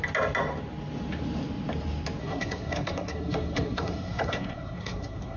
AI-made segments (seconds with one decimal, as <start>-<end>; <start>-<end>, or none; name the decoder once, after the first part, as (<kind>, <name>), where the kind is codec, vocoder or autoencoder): 2.2-5.4 (codec, SNAC)